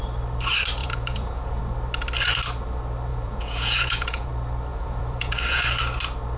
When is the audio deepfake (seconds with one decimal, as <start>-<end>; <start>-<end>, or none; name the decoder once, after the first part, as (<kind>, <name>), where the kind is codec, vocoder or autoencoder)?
0.8-1.6 (vocoder, Vocos); 3.1-4.3; 4.7-5.6